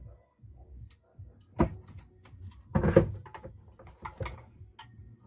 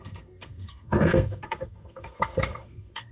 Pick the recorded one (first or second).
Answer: first